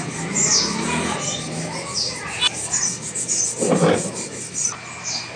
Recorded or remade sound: recorded